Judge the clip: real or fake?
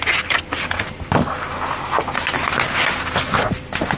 real